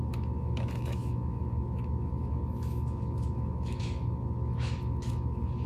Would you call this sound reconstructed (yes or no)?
yes